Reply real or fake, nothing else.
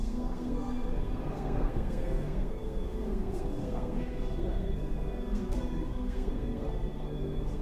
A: fake